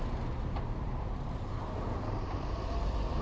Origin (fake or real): fake